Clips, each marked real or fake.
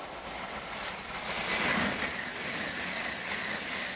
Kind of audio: real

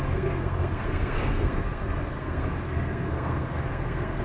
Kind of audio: fake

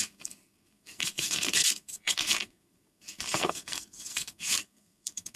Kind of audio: fake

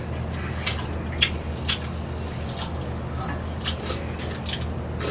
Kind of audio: real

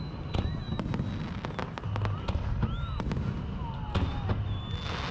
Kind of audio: real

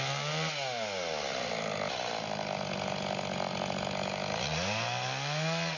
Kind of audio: real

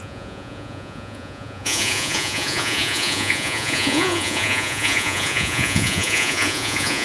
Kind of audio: fake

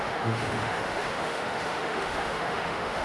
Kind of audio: fake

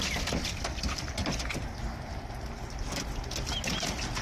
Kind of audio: real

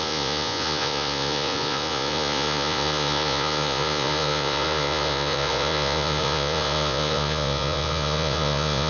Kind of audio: fake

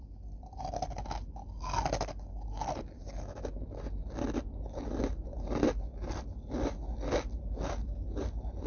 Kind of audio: real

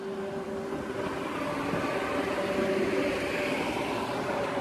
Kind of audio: real